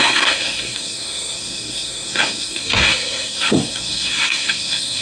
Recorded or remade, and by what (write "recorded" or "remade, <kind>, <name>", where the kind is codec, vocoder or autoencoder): remade, codec, SNAC